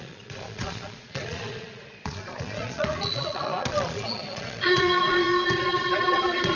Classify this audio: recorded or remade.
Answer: remade